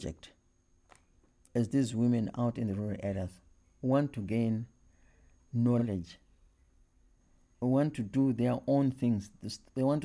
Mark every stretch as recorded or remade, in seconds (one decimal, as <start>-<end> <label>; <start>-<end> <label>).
0.0-5.8 recorded; 5.8-7.2 remade; 7.2-10.0 recorded